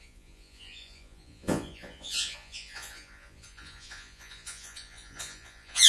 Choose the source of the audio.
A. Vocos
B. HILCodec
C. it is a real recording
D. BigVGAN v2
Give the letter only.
A